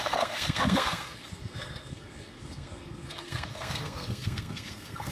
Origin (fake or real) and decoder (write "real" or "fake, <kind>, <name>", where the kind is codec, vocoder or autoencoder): fake, codec, SNAC